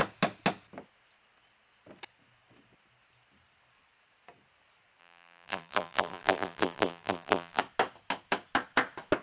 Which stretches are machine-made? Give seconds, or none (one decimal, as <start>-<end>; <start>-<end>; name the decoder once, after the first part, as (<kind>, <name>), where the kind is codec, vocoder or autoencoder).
5.0-7.6 (vocoder, BigVGAN v2)